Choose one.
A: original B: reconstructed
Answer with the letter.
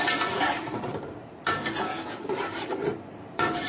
B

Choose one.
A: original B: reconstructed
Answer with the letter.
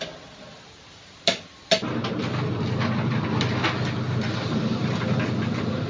A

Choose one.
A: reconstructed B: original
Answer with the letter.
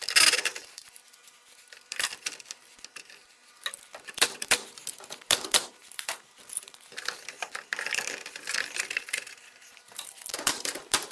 A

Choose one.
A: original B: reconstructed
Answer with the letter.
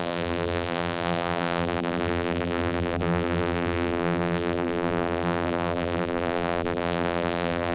B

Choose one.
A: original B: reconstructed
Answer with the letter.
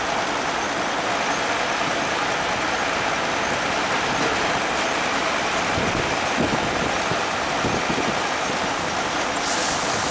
A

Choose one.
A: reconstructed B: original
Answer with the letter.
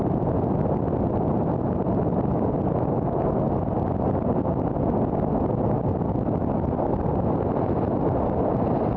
B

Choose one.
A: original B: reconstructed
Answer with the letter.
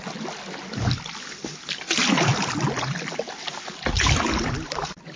A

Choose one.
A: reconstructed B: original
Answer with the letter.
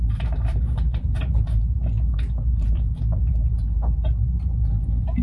A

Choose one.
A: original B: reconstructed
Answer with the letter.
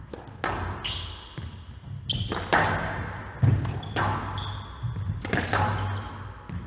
A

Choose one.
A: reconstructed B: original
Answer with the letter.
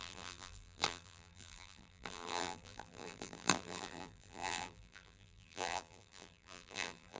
A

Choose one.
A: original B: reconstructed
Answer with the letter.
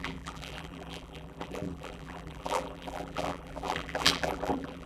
B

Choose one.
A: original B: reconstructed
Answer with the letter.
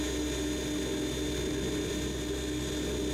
A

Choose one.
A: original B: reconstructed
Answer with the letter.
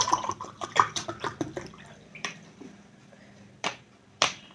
B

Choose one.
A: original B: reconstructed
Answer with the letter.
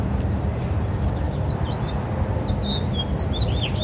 A